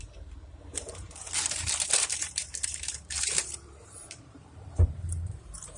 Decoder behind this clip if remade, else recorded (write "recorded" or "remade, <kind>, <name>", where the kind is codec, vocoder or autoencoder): remade, vocoder, BigVGAN v2